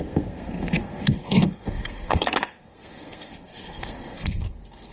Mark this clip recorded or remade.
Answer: remade